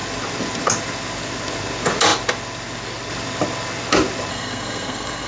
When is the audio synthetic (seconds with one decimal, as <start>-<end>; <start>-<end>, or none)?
4.3-5.3